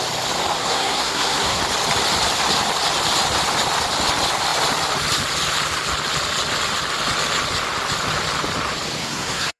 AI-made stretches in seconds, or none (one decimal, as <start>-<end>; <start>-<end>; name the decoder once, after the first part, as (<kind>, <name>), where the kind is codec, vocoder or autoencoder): 0.6-1.6 (codec, SNAC); 9.0-9.6